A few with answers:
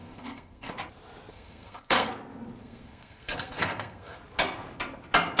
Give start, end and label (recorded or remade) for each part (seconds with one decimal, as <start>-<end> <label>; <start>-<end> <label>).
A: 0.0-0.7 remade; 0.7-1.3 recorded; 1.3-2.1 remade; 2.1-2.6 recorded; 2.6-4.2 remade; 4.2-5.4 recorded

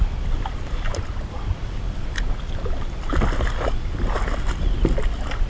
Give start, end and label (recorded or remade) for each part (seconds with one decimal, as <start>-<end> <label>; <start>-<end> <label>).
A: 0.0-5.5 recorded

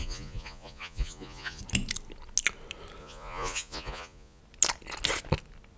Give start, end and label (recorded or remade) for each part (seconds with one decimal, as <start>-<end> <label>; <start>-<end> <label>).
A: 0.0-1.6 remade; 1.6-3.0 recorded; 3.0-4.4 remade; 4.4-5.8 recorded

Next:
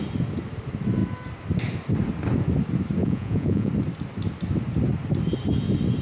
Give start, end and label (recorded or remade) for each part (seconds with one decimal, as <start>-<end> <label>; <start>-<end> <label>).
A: 0.0-3.0 recorded; 3.0-3.7 remade; 3.7-6.0 recorded

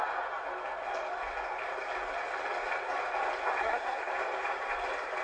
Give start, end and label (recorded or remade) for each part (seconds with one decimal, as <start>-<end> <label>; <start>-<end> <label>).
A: 0.0-3.6 recorded; 3.6-4.1 remade; 4.1-5.2 recorded

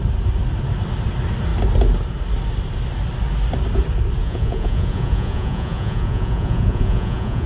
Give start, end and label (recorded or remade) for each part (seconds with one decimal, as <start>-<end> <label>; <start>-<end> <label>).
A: 0.0-4.2 recorded; 4.2-7.5 remade

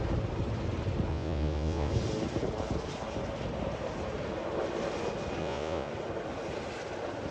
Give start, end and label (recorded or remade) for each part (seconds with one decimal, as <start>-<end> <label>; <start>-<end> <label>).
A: 0.0-1.1 recorded; 1.1-1.9 remade; 1.9-5.4 recorded; 5.4-5.9 remade; 5.9-7.3 recorded

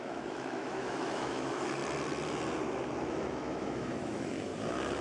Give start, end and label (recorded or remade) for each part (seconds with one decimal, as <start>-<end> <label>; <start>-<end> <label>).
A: 0.0-1.8 remade; 1.8-3.1 recorded; 3.1-4.5 remade; 4.5-5.0 recorded